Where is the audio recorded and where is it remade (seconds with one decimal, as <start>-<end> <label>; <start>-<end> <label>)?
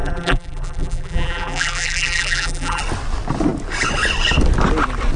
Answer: 0.0-2.8 remade; 2.8-5.2 recorded